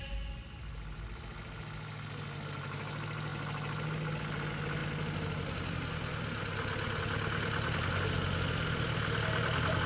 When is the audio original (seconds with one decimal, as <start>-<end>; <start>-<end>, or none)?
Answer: 0.0-9.9